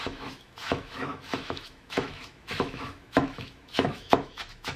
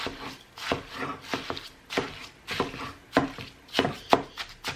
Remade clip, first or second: first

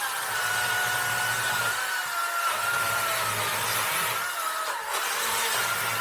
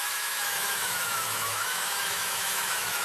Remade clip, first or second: second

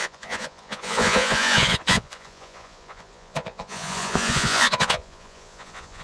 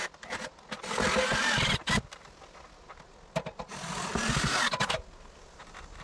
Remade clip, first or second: first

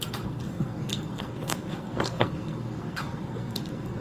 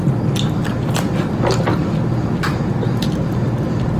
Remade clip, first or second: first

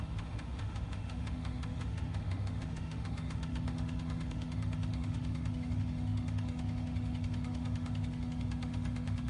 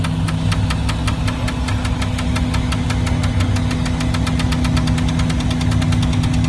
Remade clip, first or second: first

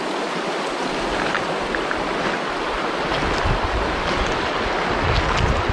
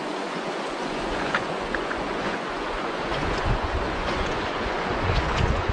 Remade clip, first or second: second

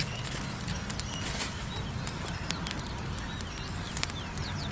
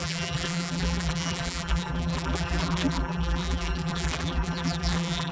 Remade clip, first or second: second